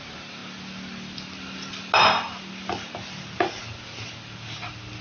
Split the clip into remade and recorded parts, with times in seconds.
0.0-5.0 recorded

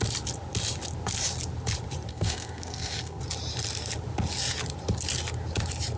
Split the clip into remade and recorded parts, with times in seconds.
0.0-2.1 recorded; 2.1-3.2 remade; 3.2-6.0 recorded

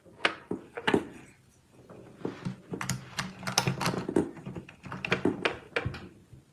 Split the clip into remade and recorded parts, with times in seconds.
0.0-6.5 recorded

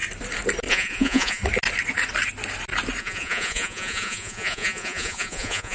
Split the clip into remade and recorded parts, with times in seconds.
0.0-0.7 recorded; 0.7-1.4 remade; 1.4-3.0 recorded; 3.0-5.7 remade

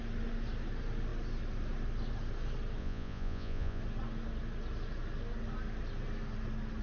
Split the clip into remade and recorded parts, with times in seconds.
0.0-2.8 recorded; 2.8-3.8 remade; 3.8-6.8 recorded

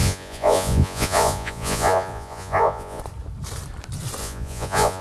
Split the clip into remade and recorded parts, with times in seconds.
0.0-3.0 remade; 3.0-4.2 recorded; 4.2-5.0 remade